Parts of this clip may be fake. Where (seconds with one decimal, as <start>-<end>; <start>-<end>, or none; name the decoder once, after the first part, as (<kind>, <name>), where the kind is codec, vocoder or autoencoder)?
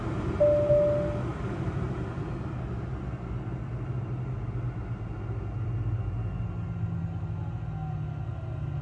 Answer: 1.3-1.9 (vocoder, BigVGAN v2)